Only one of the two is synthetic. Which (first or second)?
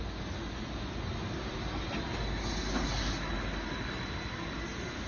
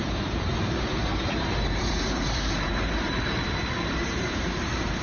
second